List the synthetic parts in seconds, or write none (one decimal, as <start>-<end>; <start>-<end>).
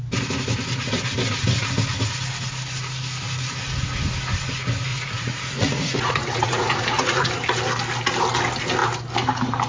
4.9-7.3